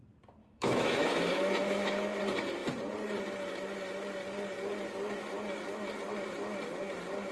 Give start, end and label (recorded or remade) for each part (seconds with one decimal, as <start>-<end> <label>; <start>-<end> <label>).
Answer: 0.0-0.4 recorded; 0.4-2.2 remade; 2.2-7.3 recorded

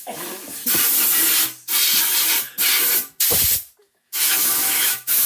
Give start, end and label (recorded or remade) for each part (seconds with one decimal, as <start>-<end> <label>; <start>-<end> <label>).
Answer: 0.0-0.6 remade; 0.6-3.8 recorded; 3.8-5.3 remade

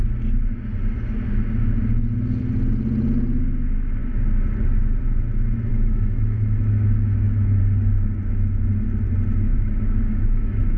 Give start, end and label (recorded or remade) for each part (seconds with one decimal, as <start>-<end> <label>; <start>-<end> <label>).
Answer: 0.0-5.7 recorded; 5.7-7.6 remade; 7.6-9.5 recorded; 9.5-10.8 remade